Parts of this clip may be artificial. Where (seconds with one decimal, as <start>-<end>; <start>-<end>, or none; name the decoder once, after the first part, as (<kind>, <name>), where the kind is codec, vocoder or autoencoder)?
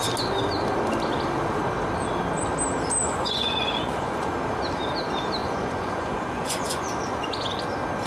3.0-4.3 (vocoder, Vocos); 5.4-7.6